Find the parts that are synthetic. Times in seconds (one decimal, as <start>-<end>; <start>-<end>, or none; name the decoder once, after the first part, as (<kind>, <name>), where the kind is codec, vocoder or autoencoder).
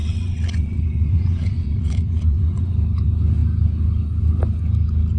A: 0.0-2.7 (vocoder, WaveNeXt)